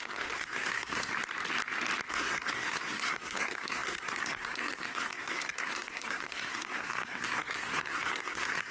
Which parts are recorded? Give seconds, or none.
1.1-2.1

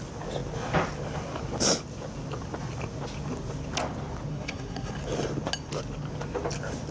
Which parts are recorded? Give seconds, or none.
0.0-4.3; 4.9-6.9

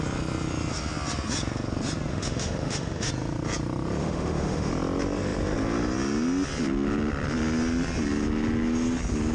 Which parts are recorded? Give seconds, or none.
0.0-2.1; 3.1-4.0; 4.7-9.3

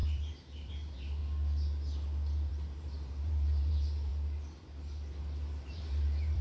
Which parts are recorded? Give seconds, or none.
1.2-2.5; 4.1-5.6

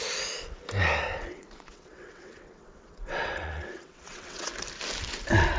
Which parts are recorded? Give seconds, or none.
0.0-1.1; 4.5-5.6

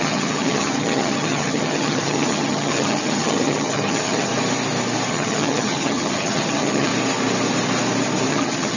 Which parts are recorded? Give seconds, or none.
4.3-5.1; 6.9-8.3